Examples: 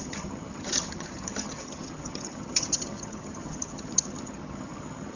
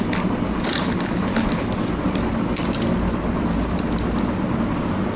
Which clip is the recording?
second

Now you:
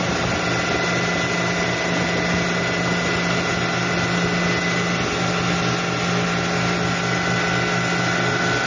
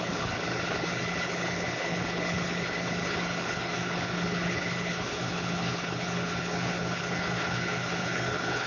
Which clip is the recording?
first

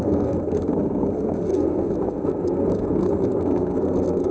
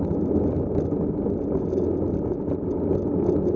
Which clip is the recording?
second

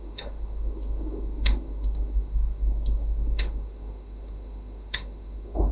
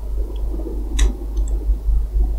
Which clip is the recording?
second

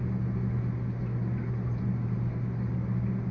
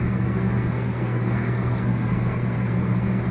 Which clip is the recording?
first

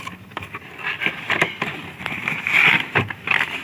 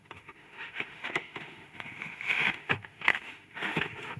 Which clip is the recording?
first